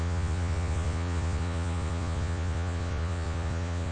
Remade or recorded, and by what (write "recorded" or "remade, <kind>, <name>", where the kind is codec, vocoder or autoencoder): remade, vocoder, Vocos